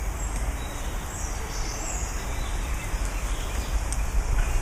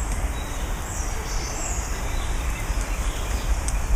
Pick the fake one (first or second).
second